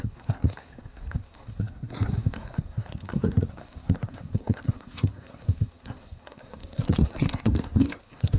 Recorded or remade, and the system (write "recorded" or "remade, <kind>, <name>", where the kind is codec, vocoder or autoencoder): remade, codec, SNAC